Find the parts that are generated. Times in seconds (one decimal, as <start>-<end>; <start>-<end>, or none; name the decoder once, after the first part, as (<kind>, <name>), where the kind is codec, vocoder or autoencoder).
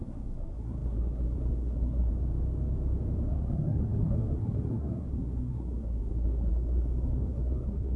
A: 0.0-2.1 (codec, SNAC); 3.3-8.0